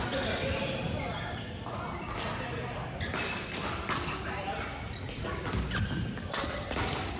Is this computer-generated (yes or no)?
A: no